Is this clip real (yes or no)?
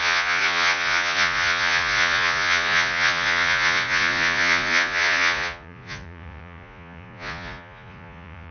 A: no